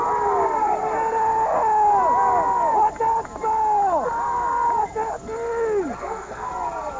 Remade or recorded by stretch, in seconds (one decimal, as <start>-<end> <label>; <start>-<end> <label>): 0.0-6.0 recorded; 6.0-6.5 remade; 6.5-7.0 recorded

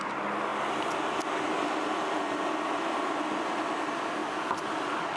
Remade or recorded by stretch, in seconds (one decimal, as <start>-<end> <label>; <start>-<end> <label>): 0.0-5.2 recorded

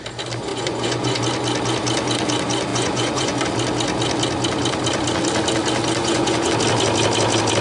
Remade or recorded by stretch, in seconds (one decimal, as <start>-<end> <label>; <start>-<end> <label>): 0.0-0.5 recorded; 0.5-1.2 remade; 1.2-2.7 recorded; 2.7-3.4 remade; 3.4-6.0 recorded; 6.0-6.5 remade; 6.5-7.6 recorded

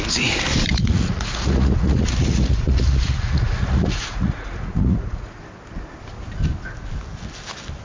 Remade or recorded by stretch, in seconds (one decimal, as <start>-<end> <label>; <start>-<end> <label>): 0.0-0.7 recorded; 0.7-5.4 remade; 5.4-7.8 recorded

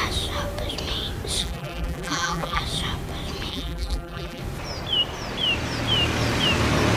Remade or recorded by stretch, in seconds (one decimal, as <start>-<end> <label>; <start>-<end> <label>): 0.0-1.4 recorded; 1.4-2.6 remade; 2.6-3.5 recorded; 3.5-4.4 remade; 4.4-7.0 recorded

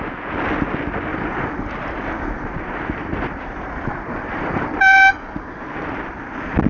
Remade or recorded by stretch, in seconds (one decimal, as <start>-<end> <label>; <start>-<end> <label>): 0.0-1.1 recorded; 1.1-5.1 remade; 5.1-6.7 recorded

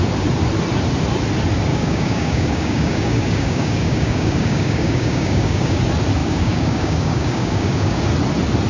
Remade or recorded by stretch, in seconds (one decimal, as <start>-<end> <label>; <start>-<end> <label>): 0.0-1.7 recorded; 1.7-5.8 remade; 5.8-6.2 recorded; 6.2-8.0 remade; 8.0-8.7 recorded